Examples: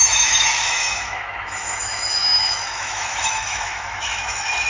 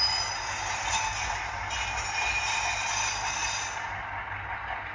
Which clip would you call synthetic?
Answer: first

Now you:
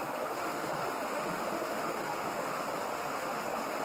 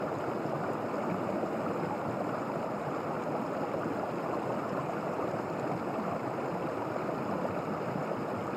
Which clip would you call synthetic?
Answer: first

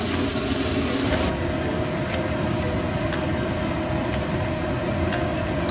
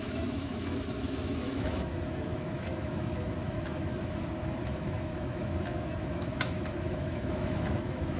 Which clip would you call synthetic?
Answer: second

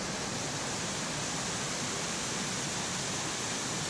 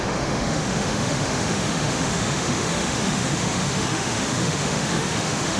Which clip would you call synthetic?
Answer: second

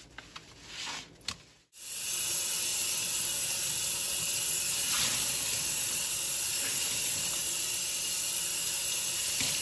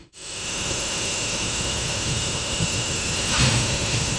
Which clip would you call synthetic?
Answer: second